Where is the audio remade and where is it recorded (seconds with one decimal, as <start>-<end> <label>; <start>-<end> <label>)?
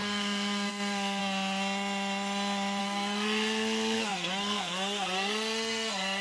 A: 0.0-1.2 remade; 1.2-2.8 recorded; 2.8-6.2 remade